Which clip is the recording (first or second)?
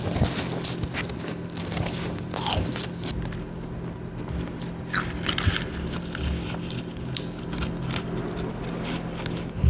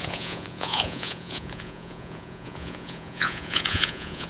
first